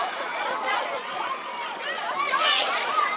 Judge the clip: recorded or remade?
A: remade